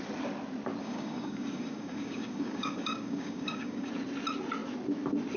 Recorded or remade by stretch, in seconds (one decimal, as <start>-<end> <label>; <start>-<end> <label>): 0.0-0.8 recorded; 0.8-3.9 remade; 3.9-5.4 recorded

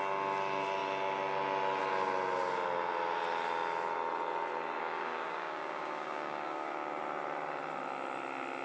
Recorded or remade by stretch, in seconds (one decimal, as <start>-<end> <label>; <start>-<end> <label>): 0.0-4.8 recorded; 4.8-7.0 remade; 7.0-8.6 recorded